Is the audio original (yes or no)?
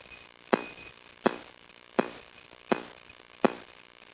yes